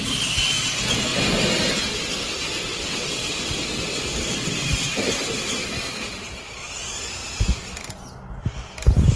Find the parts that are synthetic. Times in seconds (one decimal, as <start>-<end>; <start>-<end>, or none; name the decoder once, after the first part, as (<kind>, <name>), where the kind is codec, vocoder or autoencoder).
2.7-3.5 (vocoder, WaveNeXt)